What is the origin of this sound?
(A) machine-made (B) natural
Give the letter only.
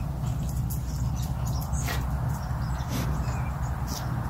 B